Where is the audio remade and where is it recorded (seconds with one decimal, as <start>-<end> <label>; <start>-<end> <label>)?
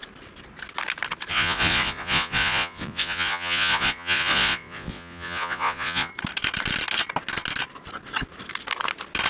0.0-1.3 recorded; 1.3-6.1 remade; 6.1-9.3 recorded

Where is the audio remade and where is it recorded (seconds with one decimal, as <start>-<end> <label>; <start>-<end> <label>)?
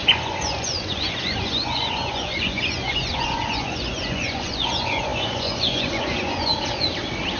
0.0-6.5 remade; 6.5-7.4 recorded